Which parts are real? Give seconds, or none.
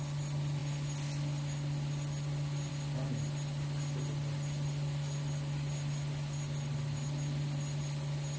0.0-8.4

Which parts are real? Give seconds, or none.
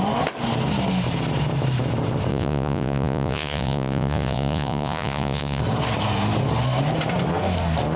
0.0-2.3; 5.6-8.0